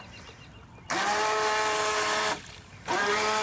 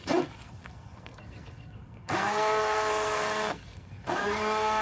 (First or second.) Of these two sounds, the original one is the first